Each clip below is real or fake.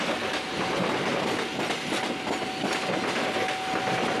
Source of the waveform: real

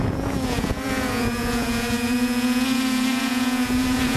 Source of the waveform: fake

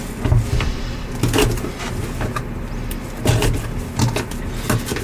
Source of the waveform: real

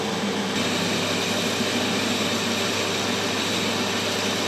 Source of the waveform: real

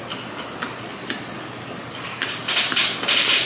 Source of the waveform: real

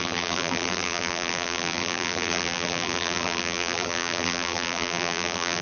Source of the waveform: fake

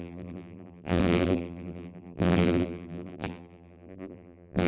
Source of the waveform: fake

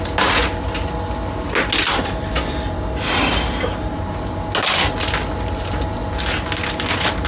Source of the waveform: real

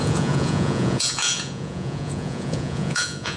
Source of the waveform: fake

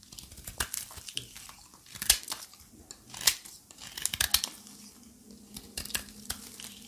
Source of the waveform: real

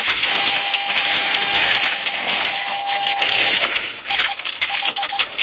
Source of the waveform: fake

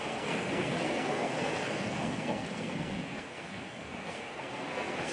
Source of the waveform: fake